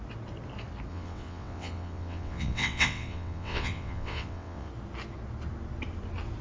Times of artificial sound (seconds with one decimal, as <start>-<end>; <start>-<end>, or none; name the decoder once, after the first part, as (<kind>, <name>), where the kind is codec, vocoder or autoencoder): 0.9-4.7 (vocoder, WaveNeXt)